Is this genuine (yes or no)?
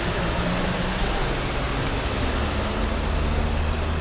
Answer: yes